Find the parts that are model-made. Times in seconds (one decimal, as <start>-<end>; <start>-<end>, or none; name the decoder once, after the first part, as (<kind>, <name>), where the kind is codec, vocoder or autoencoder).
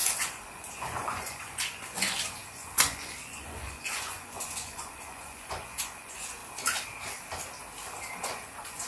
0.0-6.4 (vocoder, Vocos); 8.2-8.9